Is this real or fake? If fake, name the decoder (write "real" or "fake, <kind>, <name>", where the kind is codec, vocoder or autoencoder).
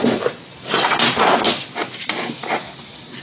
real